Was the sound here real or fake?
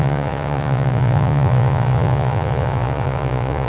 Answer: fake